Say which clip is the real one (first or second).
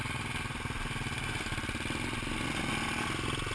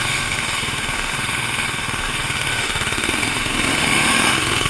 first